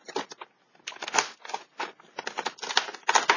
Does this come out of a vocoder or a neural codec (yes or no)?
no